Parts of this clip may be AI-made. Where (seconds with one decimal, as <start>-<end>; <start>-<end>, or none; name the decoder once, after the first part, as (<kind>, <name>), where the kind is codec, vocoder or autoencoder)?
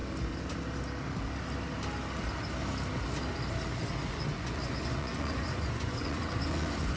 4.0-7.0 (vocoder, Vocos)